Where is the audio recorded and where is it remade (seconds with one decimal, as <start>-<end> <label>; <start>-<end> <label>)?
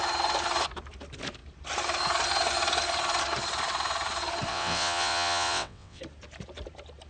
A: 0.0-4.5 recorded; 4.5-6.0 remade; 6.0-7.1 recorded